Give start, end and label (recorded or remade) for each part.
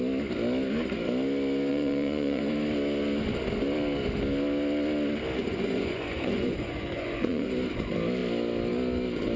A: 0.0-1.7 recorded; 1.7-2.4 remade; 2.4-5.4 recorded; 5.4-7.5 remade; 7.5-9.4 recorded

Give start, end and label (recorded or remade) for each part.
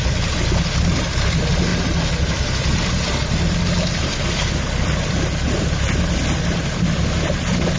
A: 0.0-7.8 recorded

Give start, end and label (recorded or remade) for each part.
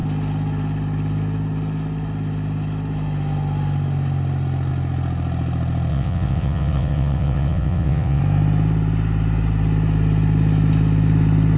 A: 0.0-5.9 recorded; 5.9-8.2 remade; 8.2-11.6 recorded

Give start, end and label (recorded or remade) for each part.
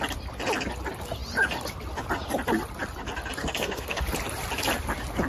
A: 0.0-3.4 recorded; 3.4-4.0 remade; 4.0-5.3 recorded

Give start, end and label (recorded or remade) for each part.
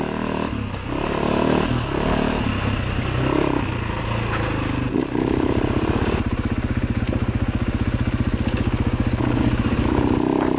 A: 0.0-10.6 recorded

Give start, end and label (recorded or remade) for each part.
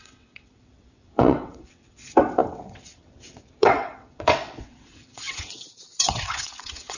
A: 0.0-7.0 remade